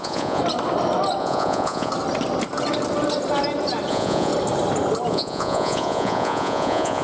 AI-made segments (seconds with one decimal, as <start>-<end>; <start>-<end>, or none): 0.0-0.4; 1.2-1.9; 3.9-4.3; 5.1-7.0